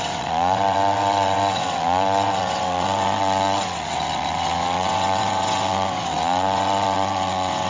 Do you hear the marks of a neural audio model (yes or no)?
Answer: yes